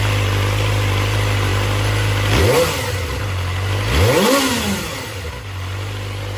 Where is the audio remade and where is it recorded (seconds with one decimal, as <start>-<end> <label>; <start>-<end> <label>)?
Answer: 0.0-6.4 recorded